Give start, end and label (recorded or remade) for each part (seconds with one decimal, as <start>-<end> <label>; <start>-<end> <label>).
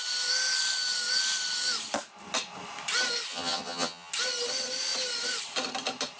0.0-3.3 recorded; 3.3-4.1 remade; 4.1-6.2 recorded